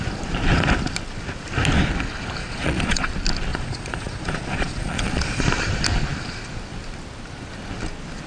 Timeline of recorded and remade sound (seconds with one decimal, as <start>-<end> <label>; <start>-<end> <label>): 0.0-2.4 recorded; 2.4-3.1 remade; 3.1-3.5 recorded; 3.5-5.4 remade; 5.4-8.3 recorded